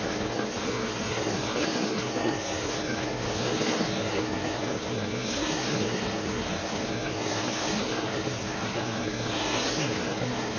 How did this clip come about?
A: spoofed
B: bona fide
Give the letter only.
A